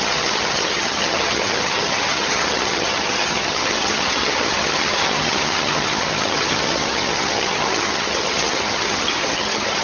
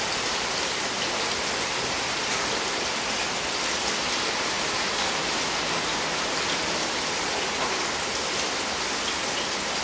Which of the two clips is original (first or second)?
second